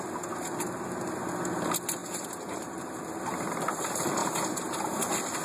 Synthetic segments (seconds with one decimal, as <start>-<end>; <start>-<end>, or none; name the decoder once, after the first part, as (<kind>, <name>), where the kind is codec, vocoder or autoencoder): 2.0-3.0 (vocoder, BigVGAN v2); 4.2-4.8